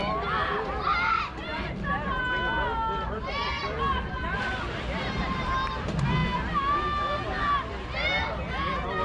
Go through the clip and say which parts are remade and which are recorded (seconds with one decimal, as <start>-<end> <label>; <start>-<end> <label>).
0.0-3.4 recorded; 3.4-4.5 remade; 4.5-9.0 recorded